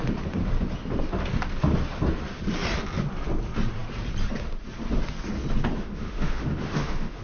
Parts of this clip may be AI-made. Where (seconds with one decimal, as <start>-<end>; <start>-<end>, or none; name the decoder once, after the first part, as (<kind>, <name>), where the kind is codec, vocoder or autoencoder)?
5.8-7.2 (autoencoder, DAC-VAE)